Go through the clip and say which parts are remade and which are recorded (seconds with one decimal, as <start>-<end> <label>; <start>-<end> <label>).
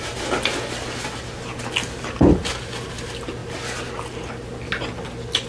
0.0-5.5 recorded